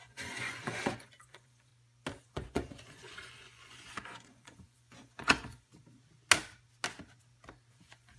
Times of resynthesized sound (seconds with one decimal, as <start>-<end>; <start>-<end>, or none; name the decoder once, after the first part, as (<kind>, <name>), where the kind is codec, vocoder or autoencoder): 0.0-1.7 (vocoder, Vocos); 2.2-5.7; 7.7-8.2